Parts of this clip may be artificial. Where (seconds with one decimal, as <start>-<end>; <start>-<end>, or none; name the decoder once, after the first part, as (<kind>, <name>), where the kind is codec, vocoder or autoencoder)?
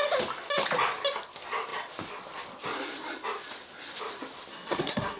4.5-5.2 (codec, SNAC)